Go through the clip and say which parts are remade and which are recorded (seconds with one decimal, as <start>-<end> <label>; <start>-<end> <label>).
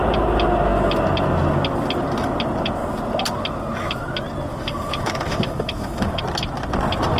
0.0-4.5 recorded; 4.5-6.2 remade; 6.2-7.2 recorded